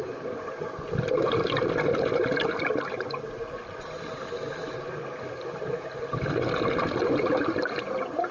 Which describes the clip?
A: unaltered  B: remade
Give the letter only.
A